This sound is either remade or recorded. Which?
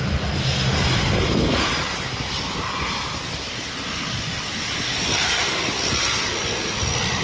recorded